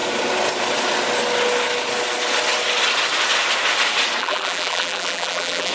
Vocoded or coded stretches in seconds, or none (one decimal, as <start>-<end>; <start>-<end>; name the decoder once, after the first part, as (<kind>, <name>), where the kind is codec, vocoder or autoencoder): 4.2-5.7 (vocoder, BigVGAN v2)